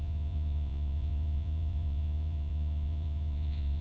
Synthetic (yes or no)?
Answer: yes